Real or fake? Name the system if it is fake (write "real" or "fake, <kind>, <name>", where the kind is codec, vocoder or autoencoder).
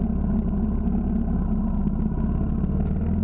real